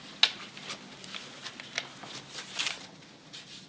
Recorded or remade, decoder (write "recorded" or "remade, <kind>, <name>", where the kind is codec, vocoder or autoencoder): recorded